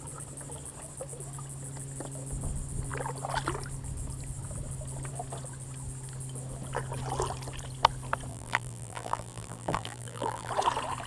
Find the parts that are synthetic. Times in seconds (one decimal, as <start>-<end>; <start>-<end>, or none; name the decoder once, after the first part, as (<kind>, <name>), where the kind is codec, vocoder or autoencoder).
8.3-10.5 (vocoder, BigVGAN v2)